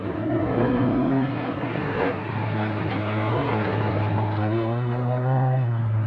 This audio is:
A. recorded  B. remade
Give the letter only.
B